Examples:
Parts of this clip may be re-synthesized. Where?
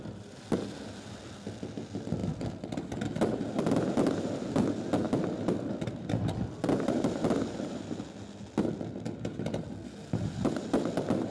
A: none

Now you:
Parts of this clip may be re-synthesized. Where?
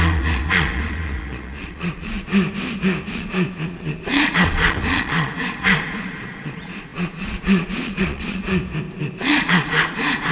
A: 0.0-2.3 (vocoder, Vocos); 3.1-8.5; 9.2-10.3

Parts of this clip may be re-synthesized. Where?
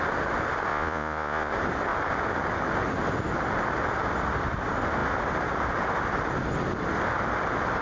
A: 0.7-1.5 (vocoder, Vocos)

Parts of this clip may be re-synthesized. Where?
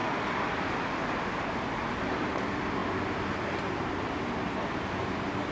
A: none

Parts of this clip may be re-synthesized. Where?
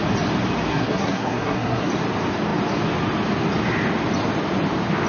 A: 0.7-1.9 (codec, SNAC)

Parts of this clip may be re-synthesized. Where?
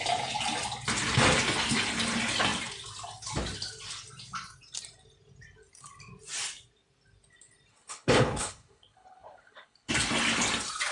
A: 7.7-9.9 (codec, HILCodec)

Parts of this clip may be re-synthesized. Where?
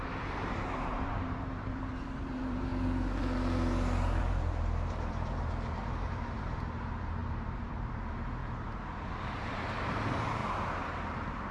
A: 0.0-2.7 (vocoder, BigVGAN v2); 4.2-10.4